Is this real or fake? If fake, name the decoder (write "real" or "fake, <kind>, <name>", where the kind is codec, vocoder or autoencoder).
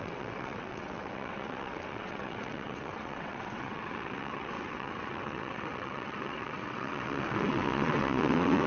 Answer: fake, vocoder, WaveNeXt